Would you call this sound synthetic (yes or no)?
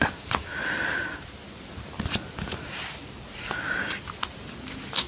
no